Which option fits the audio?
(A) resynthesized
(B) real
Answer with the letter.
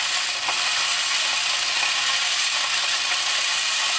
B